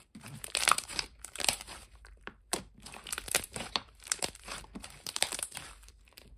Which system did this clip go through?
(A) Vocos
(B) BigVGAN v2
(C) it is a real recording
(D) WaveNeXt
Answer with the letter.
B